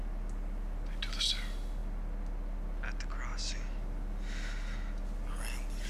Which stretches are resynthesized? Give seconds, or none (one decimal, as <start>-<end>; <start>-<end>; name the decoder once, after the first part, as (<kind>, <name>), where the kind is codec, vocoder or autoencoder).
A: none